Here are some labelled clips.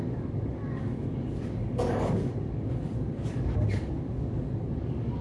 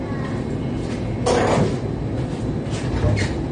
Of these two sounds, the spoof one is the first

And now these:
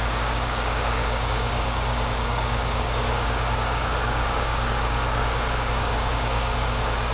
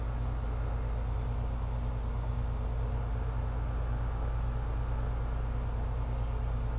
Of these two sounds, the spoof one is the first